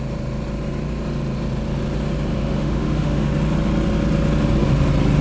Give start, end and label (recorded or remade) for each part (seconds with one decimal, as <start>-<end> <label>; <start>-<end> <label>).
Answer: 0.0-2.3 recorded; 2.3-3.3 remade; 3.3-5.2 recorded